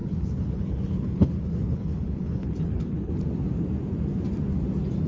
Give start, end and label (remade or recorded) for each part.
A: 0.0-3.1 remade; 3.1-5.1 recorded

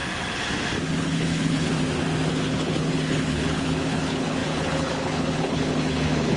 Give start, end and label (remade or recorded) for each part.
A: 0.0-1.0 recorded; 1.0-1.7 remade; 1.7-2.3 recorded; 2.3-6.4 remade

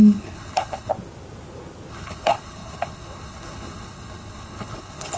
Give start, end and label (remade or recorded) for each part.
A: 0.0-0.9 remade; 0.9-1.9 recorded; 1.9-5.2 remade

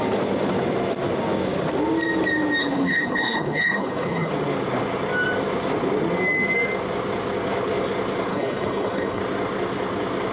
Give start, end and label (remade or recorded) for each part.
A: 0.0-2.6 recorded; 2.6-4.3 remade; 4.3-8.3 recorded; 8.3-9.2 remade; 9.2-10.3 recorded